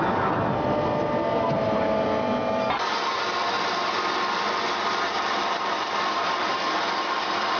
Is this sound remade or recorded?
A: recorded